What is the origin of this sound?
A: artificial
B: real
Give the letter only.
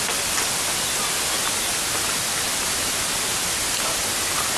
B